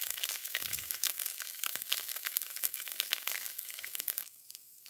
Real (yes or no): no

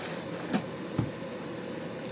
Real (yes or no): yes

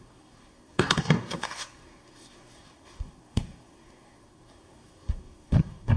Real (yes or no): no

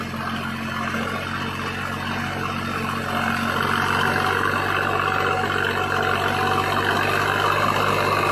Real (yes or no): yes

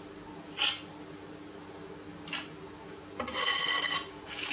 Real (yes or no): yes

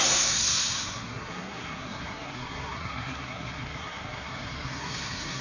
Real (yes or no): no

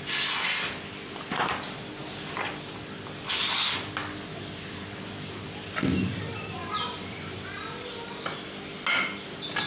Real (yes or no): yes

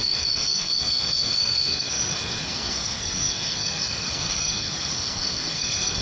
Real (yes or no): no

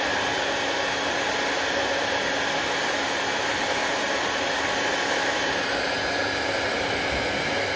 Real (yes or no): yes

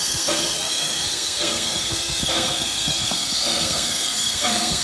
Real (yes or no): no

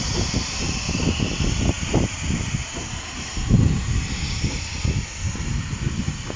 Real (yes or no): yes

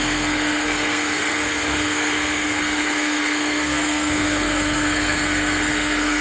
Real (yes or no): no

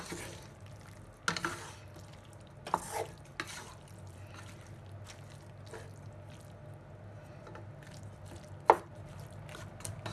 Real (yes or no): yes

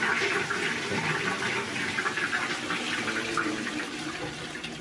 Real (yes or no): yes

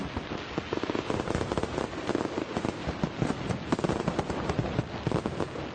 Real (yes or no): yes